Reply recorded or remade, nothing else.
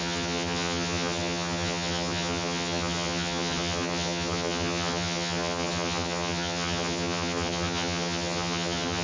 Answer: remade